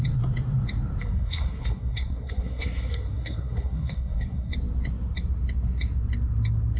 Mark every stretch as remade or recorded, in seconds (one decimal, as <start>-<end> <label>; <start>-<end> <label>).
0.0-1.0 recorded; 1.0-4.5 remade; 4.5-6.8 recorded